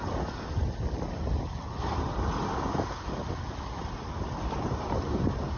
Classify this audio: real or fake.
real